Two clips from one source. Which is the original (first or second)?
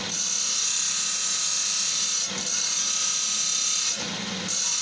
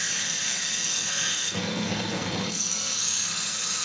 first